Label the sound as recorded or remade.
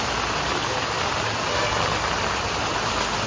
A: recorded